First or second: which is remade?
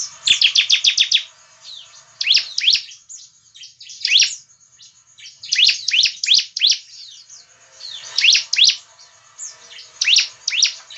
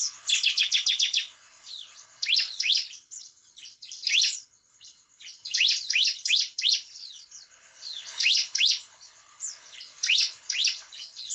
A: second